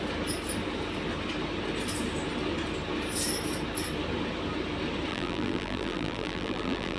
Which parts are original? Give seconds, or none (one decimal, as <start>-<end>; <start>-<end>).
0.0-5.1